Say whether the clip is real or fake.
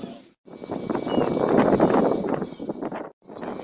real